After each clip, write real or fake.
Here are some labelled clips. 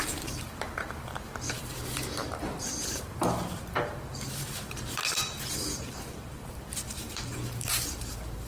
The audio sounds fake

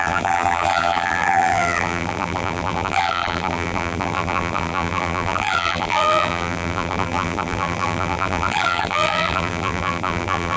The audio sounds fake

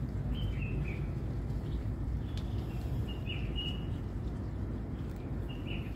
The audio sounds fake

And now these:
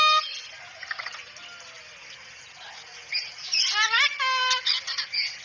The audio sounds real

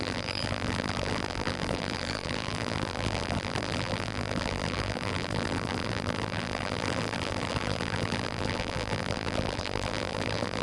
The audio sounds fake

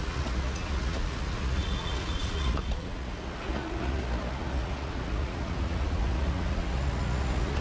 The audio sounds fake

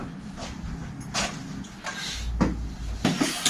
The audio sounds real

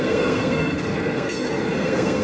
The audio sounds fake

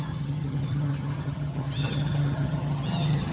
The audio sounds fake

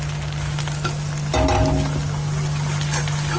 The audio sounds real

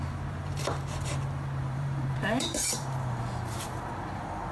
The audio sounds fake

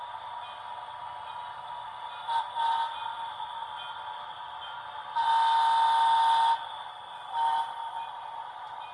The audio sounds real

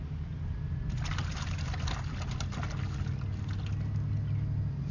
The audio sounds real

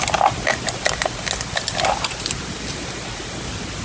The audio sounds real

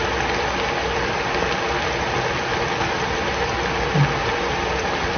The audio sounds real